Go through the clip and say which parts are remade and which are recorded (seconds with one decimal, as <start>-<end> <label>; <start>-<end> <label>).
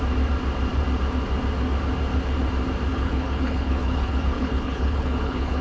0.0-2.9 recorded; 2.9-5.6 remade